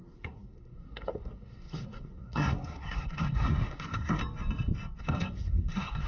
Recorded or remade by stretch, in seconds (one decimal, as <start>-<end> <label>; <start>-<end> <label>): 0.0-4.2 remade; 4.2-5.0 recorded; 5.0-6.1 remade